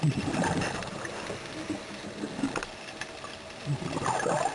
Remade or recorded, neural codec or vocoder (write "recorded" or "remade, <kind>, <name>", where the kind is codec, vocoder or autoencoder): recorded